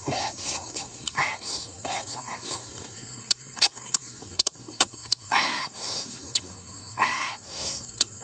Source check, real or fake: fake